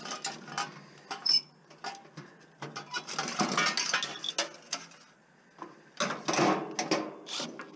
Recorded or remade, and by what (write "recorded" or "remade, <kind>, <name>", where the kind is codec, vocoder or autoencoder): recorded